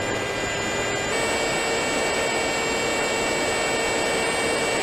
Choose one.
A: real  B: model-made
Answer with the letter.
A